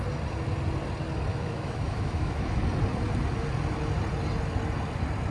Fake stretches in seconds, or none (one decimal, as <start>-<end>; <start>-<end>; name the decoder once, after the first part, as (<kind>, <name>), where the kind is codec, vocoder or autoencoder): 1.3-2.6 (autoencoder, DAC-VAE)